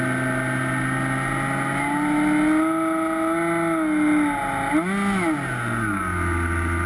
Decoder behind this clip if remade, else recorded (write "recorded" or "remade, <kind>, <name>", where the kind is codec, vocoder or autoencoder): recorded